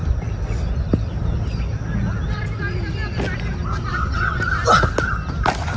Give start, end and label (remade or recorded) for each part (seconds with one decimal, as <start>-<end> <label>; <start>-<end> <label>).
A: 0.0-3.9 recorded; 3.9-4.4 remade; 4.4-5.8 recorded